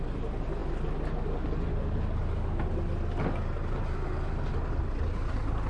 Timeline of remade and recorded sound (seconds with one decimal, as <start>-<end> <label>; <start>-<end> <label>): 0.0-5.7 recorded